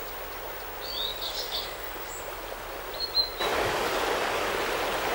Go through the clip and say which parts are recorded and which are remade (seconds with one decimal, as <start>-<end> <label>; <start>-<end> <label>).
0.0-1.1 recorded; 1.1-2.1 remade; 2.1-3.5 recorded; 3.5-4.5 remade; 4.5-5.1 recorded